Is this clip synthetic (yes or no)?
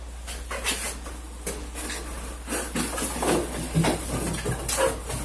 no